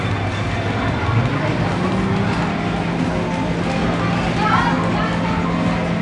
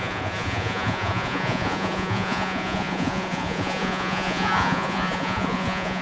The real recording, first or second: first